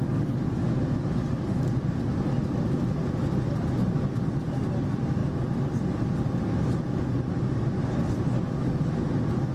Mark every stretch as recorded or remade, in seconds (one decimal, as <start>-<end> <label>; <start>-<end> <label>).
0.0-9.5 recorded